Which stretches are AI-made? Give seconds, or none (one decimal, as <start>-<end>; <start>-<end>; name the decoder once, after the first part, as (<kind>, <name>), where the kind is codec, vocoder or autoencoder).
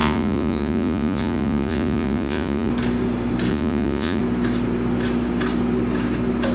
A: 0.0-2.7 (vocoder, Vocos); 3.5-4.2